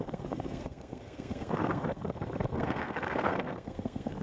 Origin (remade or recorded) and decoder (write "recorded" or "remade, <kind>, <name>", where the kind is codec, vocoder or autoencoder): remade, codec, SNAC